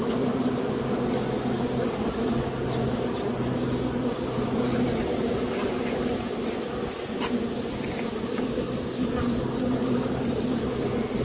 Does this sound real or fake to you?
real